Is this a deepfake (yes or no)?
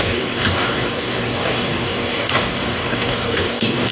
yes